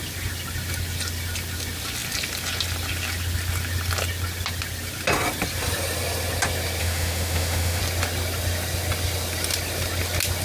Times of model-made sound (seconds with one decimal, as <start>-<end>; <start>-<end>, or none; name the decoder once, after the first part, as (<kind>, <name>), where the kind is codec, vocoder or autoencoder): 6.8-7.8 (autoencoder, DAC-VAE)